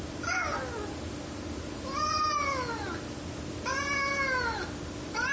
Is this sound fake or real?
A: real